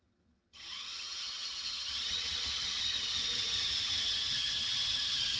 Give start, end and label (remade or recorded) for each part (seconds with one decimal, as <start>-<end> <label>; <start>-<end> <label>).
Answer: 0.0-5.4 remade